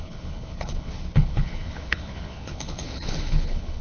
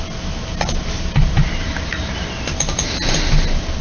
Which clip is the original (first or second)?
second